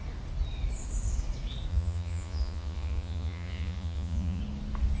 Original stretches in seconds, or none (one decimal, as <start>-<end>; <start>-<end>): 0.0-1.7; 4.4-5.0